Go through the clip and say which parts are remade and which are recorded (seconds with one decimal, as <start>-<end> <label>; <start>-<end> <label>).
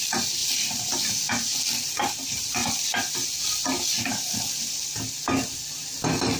0.0-2.6 remade; 2.6-6.4 recorded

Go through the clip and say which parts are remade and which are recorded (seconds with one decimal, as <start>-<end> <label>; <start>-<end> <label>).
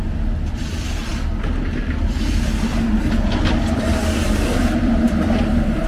0.0-1.1 remade; 1.1-2.7 recorded; 2.7-5.9 remade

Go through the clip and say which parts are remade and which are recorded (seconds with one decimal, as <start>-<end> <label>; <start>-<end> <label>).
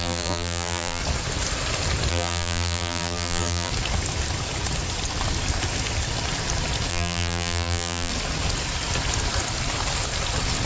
0.0-1.0 remade; 1.0-2.1 recorded; 2.1-3.7 remade; 3.7-6.9 recorded; 6.9-8.1 remade; 8.1-10.7 recorded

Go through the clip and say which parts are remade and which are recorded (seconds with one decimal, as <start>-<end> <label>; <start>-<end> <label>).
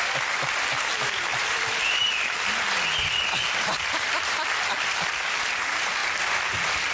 0.0-1.3 recorded; 1.3-5.4 remade; 5.4-6.0 recorded; 6.0-6.9 remade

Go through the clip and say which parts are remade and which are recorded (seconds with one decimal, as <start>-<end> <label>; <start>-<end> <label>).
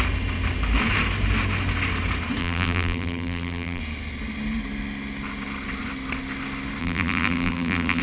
0.0-2.4 recorded; 2.4-3.8 remade; 3.8-6.8 recorded; 6.8-8.0 remade